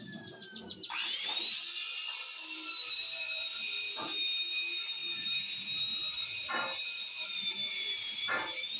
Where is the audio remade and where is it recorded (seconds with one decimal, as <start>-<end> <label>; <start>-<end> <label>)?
0.0-8.8 remade